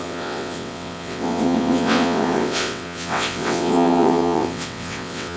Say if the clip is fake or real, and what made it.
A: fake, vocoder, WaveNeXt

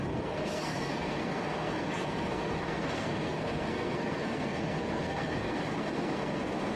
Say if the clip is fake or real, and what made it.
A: fake, codec, SNAC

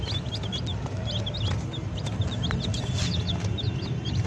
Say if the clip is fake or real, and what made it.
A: real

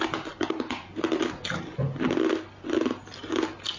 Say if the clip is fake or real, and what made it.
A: real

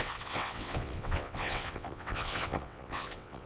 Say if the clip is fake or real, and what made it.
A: fake, vocoder, WaveNeXt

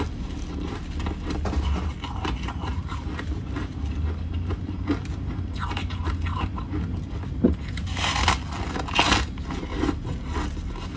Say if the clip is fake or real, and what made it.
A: real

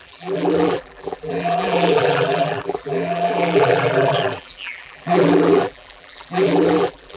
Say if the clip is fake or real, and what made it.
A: fake, vocoder, BigVGAN v2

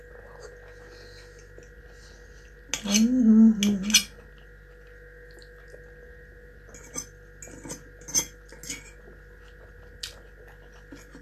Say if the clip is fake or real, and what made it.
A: real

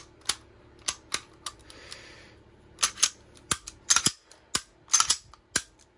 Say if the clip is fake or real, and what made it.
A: real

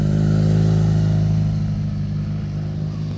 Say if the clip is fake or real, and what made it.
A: real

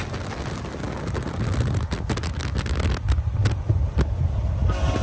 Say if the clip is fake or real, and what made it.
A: real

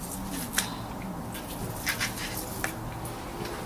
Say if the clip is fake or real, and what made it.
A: real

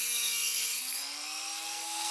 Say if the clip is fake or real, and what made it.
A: fake, codec, SNAC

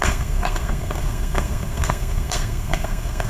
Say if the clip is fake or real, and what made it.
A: fake, codec, SNAC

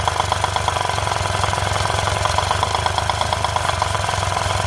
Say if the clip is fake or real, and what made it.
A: real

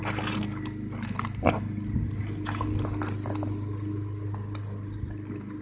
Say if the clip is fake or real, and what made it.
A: real